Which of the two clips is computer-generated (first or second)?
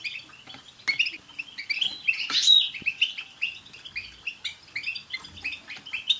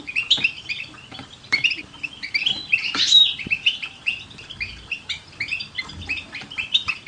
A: second